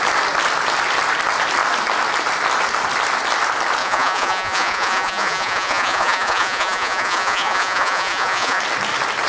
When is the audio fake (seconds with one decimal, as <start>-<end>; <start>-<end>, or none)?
3.8-8.6